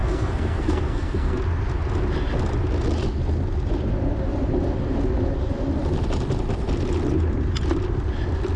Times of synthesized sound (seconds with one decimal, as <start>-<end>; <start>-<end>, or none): 0.0-1.4